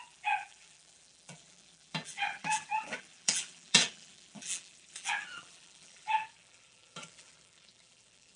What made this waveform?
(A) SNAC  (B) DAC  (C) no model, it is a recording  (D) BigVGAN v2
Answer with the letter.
D